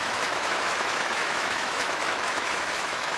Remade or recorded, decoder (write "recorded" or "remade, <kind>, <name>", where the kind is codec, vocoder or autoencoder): remade, autoencoder, DAC-VAE